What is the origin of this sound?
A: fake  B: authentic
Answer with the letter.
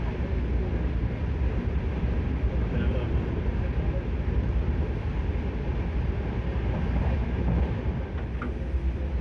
B